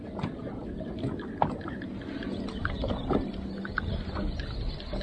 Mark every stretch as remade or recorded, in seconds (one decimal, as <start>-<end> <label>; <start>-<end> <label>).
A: 0.0-5.0 recorded